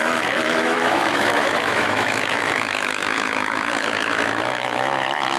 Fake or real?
fake